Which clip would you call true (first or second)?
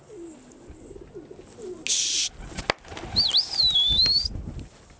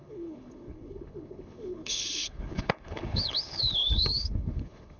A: first